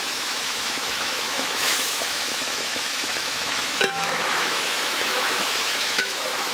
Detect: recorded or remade remade